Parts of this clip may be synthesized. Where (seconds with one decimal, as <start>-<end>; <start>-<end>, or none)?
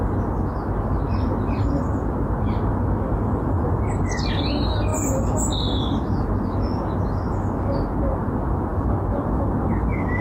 none